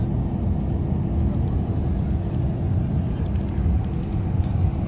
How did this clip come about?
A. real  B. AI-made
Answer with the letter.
A